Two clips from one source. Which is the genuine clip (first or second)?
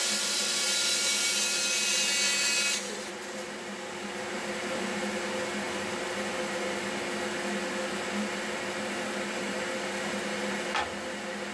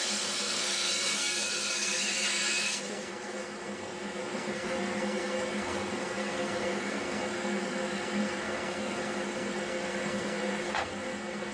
first